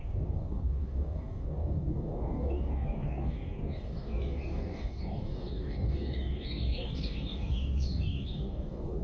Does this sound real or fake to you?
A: fake